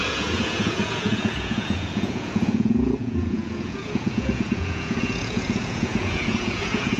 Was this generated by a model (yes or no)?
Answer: yes